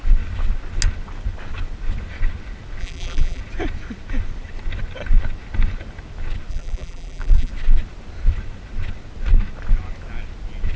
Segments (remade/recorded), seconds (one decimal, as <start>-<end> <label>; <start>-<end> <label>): 0.0-2.8 recorded; 2.8-3.4 remade; 3.4-6.5 recorded; 6.5-7.5 remade; 7.5-10.8 recorded